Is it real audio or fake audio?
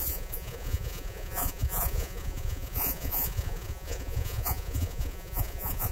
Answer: fake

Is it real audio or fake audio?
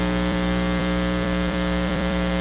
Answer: fake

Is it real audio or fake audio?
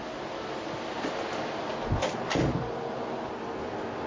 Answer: real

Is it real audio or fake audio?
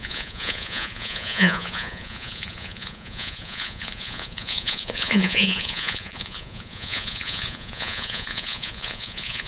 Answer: fake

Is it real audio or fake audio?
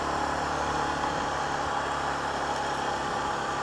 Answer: real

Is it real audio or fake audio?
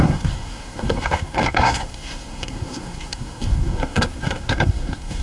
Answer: fake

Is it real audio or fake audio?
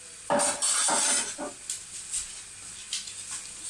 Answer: real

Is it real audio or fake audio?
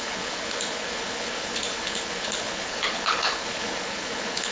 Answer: fake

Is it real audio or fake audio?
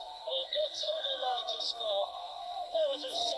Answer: fake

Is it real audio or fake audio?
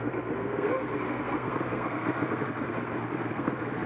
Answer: fake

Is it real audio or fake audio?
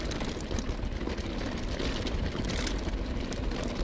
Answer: real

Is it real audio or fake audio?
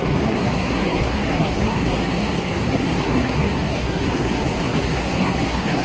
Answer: fake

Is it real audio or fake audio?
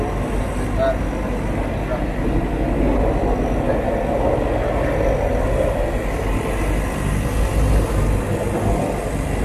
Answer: real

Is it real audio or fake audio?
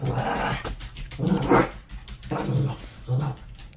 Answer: fake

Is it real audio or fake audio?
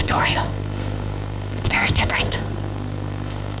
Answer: fake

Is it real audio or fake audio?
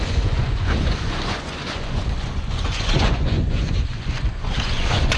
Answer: fake